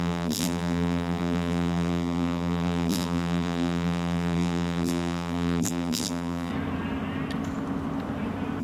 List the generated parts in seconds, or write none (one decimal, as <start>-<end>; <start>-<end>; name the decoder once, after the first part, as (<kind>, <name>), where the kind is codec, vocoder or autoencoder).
0.0-6.5 (vocoder, BigVGAN v2)